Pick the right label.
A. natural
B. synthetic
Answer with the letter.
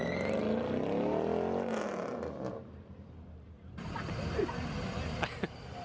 A